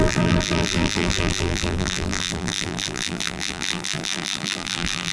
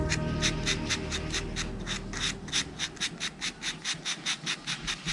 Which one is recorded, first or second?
second